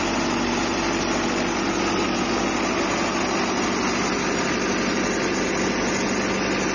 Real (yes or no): yes